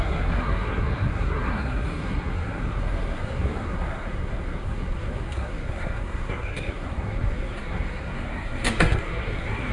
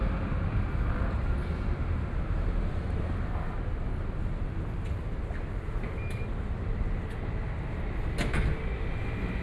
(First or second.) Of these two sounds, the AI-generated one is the first